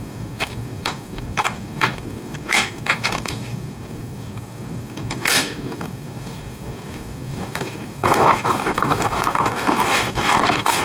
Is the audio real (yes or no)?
no